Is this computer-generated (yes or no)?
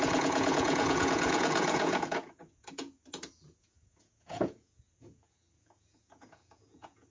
yes